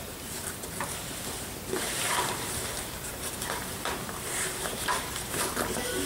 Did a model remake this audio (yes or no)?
yes